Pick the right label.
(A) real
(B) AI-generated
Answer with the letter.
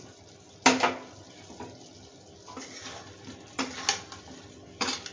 A